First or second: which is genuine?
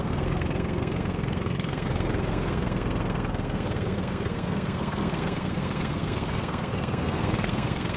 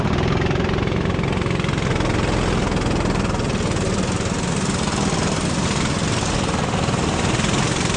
second